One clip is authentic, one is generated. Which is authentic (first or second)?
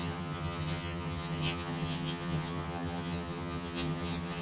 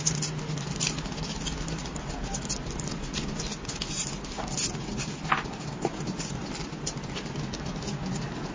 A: second